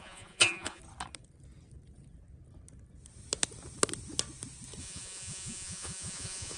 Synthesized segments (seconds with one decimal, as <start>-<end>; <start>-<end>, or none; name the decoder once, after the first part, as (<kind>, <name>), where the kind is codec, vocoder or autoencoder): 0.0-0.8 (vocoder, Vocos); 4.8-6.6